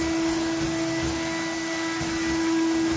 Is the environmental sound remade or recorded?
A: recorded